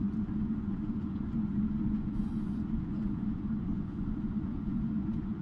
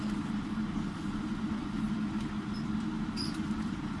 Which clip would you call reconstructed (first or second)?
first